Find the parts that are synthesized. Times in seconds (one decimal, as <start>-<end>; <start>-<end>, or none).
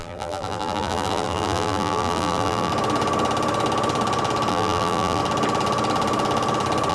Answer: 0.0-2.7; 4.5-5.2